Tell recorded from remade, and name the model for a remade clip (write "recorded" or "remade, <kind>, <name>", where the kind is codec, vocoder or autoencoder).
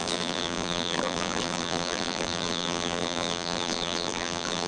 remade, vocoder, BigVGAN v2